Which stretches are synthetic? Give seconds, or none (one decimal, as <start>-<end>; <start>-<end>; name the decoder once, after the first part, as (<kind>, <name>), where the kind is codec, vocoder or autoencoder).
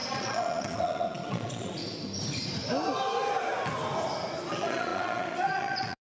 0.0-1.8 (vocoder, Vocos); 4.5-6.0